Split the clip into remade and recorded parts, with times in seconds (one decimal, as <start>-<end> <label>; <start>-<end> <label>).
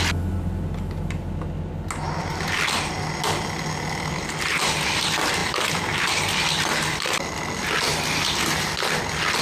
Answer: 0.0-9.4 recorded